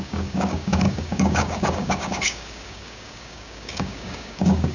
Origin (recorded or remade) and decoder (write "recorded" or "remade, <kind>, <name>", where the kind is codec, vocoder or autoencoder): remade, codec, DAC